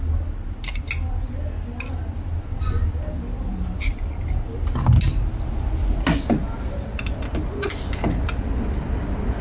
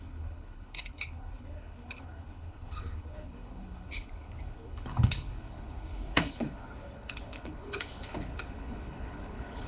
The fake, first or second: second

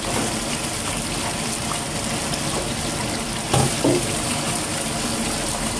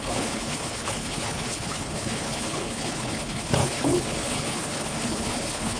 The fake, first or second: second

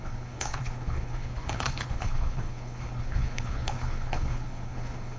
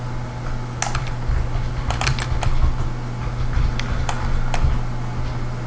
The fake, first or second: first